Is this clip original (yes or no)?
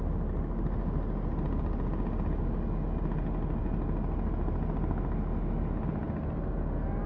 yes